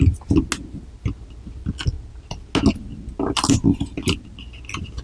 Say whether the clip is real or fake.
real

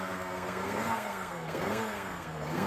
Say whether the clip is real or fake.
fake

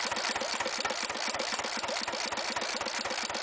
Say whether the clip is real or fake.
real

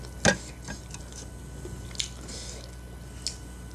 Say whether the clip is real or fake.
real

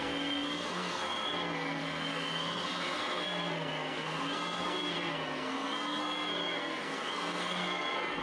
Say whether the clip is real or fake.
fake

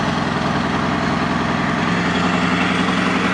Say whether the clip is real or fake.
real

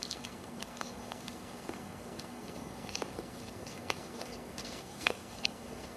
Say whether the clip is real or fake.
fake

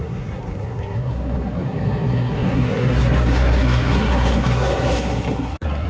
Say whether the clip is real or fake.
fake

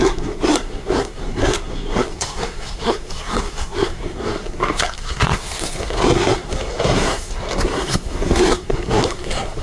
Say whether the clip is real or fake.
fake